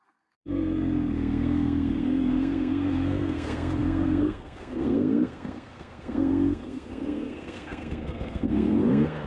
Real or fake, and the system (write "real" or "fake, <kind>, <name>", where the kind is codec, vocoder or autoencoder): fake, codec, SNAC